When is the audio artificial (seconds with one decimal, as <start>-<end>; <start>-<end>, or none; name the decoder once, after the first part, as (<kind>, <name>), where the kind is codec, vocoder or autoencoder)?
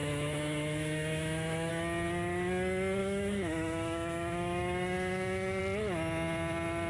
0.0-1.7 (autoencoder, DAC-VAE); 3.0-5.6